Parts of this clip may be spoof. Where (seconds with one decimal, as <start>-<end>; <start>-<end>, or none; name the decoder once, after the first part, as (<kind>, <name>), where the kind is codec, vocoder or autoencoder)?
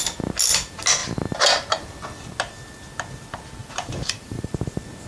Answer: 3.6-4.5 (vocoder, BigVGAN v2)